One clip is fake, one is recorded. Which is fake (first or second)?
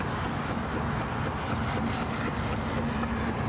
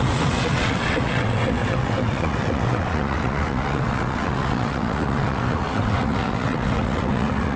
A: second